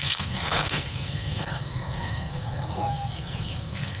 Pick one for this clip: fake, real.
fake